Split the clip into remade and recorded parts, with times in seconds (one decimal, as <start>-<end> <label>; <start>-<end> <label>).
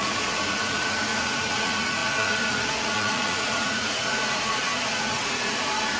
0.0-6.0 remade